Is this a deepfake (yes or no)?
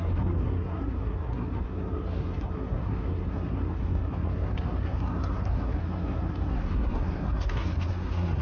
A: yes